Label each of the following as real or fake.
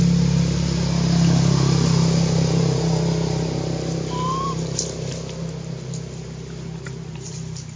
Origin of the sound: real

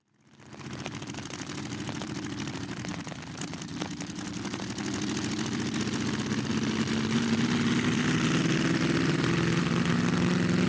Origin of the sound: real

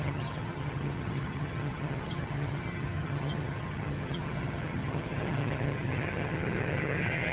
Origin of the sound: fake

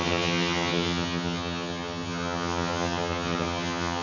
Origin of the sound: fake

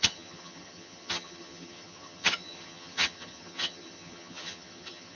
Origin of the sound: fake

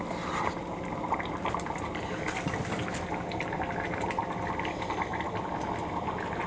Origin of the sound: real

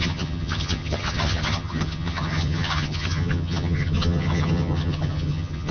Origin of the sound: fake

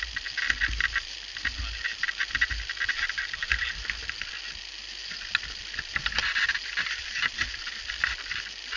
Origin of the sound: real